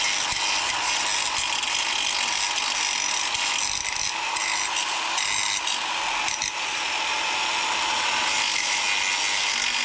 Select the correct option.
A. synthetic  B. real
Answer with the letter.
B